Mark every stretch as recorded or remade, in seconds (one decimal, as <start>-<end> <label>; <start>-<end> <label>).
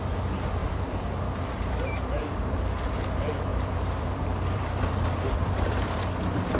0.0-0.6 recorded; 0.6-2.2 remade; 2.2-3.5 recorded; 3.5-6.0 remade; 6.0-6.6 recorded